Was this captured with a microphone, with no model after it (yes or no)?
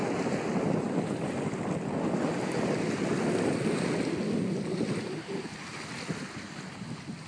yes